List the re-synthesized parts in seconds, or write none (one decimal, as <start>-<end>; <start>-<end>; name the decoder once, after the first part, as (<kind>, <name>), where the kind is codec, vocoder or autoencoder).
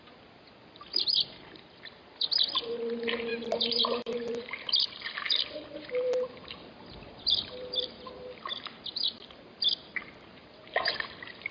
3.3-8.5 (vocoder, BigVGAN v2); 10.3-11.5